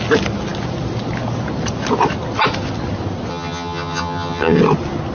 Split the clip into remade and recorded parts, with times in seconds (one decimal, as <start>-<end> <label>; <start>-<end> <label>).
0.0-3.3 recorded; 3.3-4.6 remade; 4.6-5.1 recorded